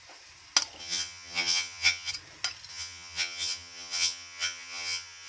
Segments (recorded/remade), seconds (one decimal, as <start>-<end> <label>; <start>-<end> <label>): 0.0-0.8 recorded; 0.8-2.1 remade; 2.1-2.7 recorded; 2.7-5.3 remade